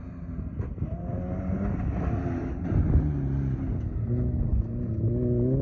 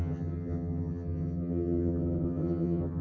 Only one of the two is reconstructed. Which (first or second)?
second